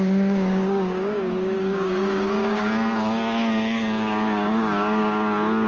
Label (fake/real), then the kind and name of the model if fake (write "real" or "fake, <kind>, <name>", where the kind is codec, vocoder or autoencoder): fake, codec, DAC